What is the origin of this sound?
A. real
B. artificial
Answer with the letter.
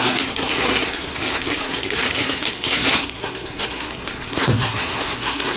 B